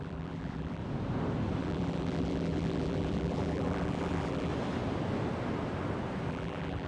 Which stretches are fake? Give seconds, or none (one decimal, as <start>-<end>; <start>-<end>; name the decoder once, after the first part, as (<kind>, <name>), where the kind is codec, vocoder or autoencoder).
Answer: 0.0-0.8 (vocoder, BigVGAN v2); 1.6-4.5; 6.3-6.9